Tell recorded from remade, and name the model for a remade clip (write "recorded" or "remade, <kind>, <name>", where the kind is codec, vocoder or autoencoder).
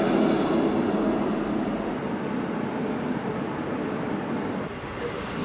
recorded